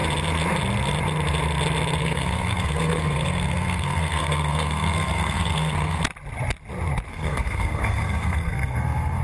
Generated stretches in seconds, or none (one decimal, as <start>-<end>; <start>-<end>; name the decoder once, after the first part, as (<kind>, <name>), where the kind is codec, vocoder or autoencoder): 2.0-6.0 (codec, SNAC); 7.1-9.2

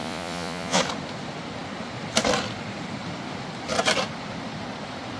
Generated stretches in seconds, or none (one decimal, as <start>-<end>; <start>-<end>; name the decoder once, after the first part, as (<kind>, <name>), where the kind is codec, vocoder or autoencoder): 0.0-0.8 (vocoder, Vocos)